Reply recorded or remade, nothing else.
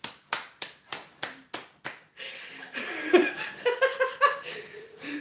recorded